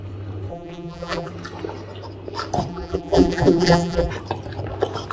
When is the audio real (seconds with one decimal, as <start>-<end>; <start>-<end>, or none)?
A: 0.0-0.5; 1.3-2.7; 4.1-5.1